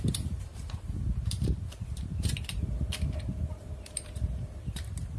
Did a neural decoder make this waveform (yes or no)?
yes